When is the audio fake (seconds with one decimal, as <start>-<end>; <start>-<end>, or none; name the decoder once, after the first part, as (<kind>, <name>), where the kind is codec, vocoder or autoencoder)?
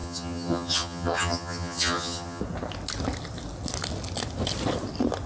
0.0-2.4 (vocoder, HiFi-GAN)